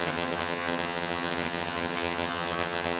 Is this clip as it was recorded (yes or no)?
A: no